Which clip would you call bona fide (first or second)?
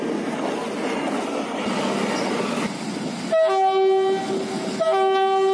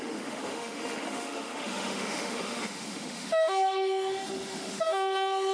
first